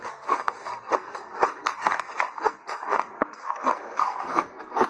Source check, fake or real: fake